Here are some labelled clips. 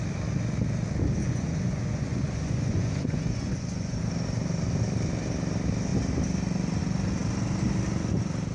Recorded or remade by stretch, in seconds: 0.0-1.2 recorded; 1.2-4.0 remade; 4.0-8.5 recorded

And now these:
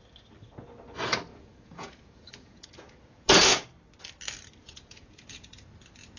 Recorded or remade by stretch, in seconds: 0.0-1.3 recorded; 1.3-3.6 remade; 3.6-4.6 recorded; 4.6-5.6 remade; 5.6-6.2 recorded

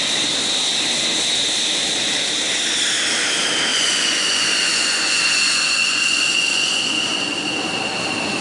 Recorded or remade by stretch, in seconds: 0.0-3.7 recorded; 3.7-7.5 remade; 7.5-8.4 recorded

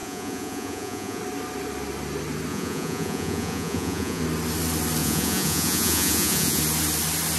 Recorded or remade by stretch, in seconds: 0.0-1.2 remade; 1.2-2.5 recorded; 2.5-4.2 remade; 4.2-5.0 recorded; 5.0-6.6 remade; 6.6-7.4 recorded